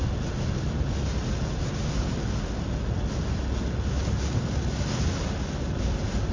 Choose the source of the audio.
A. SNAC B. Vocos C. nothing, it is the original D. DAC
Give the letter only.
C